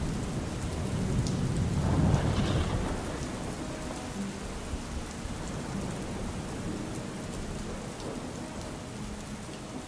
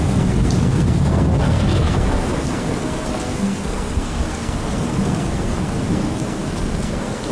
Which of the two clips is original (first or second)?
first